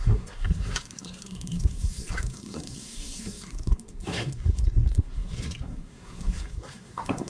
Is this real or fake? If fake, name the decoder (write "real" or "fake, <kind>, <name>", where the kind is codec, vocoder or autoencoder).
fake, codec, SNAC